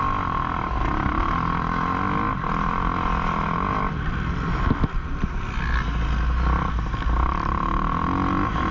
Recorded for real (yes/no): yes